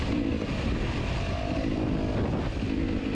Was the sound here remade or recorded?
recorded